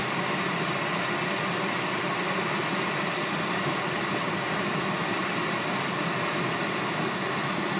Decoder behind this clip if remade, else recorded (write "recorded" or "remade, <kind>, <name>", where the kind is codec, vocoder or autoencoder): recorded